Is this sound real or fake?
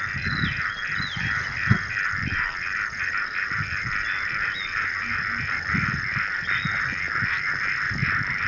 real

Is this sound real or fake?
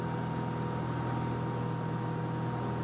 real